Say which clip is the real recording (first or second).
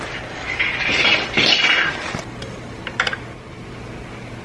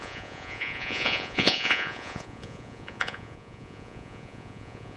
first